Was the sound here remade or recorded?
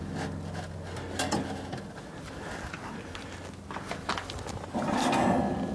recorded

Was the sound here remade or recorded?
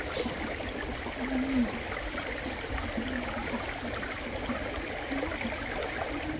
recorded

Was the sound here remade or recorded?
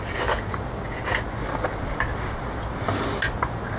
recorded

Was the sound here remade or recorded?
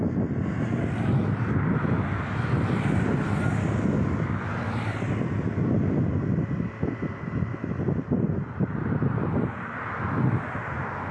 recorded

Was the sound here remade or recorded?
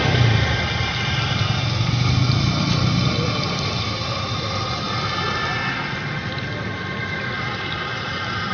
recorded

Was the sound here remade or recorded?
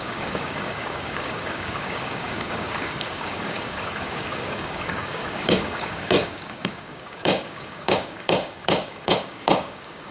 remade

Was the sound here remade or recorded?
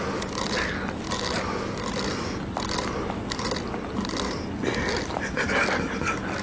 recorded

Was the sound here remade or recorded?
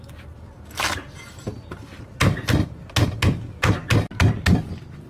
recorded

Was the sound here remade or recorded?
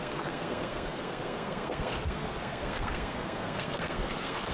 remade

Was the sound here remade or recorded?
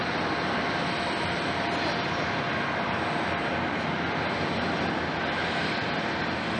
recorded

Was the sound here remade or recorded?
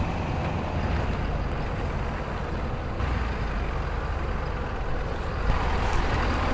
recorded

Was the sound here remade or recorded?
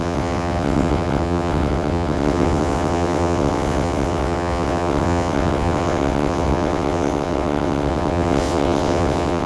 remade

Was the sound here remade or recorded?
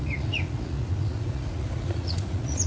remade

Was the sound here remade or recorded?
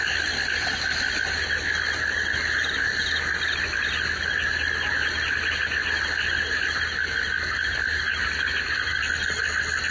recorded